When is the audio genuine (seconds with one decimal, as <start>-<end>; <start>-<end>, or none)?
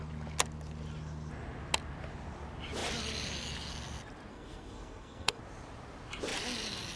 0.0-4.3; 5.4-7.0